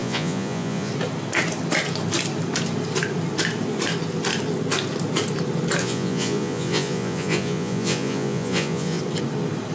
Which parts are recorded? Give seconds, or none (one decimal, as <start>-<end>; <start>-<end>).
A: 0.9-5.8; 9.0-9.7